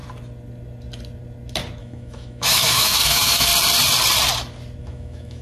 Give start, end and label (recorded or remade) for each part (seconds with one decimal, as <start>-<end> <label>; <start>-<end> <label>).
0.0-1.8 recorded; 1.8-3.5 remade; 3.5-4.8 recorded; 4.8-5.4 remade